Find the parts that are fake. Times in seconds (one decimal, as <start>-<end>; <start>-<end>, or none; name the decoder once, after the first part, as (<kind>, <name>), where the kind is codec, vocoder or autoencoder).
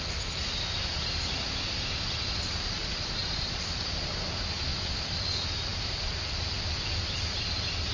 3.2-4.1 (vocoder, BigVGAN v2); 4.7-5.2; 5.7-7.4